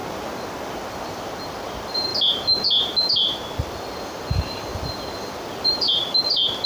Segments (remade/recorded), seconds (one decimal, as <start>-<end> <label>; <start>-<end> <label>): 0.0-1.5 recorded; 1.5-2.1 remade; 2.1-3.0 recorded; 3.0-6.7 remade